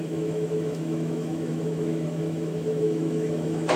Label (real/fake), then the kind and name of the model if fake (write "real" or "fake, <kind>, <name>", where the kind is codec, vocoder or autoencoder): fake, autoencoder, DAC-VAE